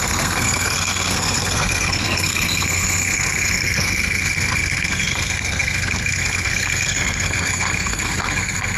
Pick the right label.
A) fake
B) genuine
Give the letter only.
A